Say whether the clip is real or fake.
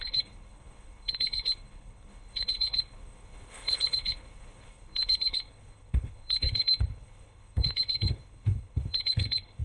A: fake